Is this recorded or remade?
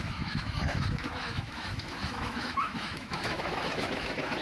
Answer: remade